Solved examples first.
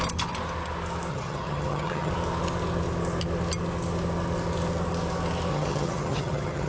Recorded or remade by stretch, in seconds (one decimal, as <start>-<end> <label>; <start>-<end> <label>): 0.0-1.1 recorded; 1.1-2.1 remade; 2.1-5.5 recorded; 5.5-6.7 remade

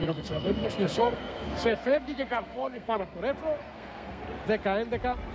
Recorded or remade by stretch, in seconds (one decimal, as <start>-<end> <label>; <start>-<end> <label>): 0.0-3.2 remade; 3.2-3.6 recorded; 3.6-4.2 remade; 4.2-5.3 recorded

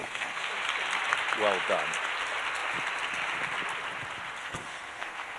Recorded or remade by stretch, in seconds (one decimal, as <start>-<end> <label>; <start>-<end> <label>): 0.0-0.5 remade; 0.5-4.4 recorded; 4.4-5.4 remade